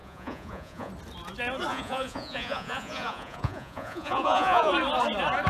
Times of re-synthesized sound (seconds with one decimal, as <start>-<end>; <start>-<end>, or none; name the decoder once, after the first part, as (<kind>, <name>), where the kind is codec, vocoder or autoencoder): 0.0-0.9 (vocoder, Vocos); 1.7-4.7